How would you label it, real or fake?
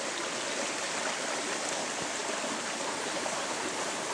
real